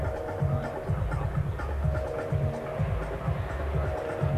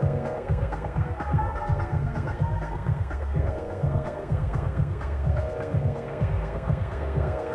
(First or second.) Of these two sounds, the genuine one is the first